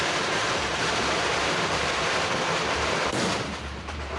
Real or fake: fake